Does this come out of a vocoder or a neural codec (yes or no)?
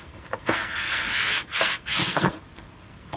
yes